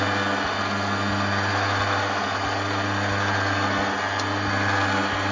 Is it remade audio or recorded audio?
recorded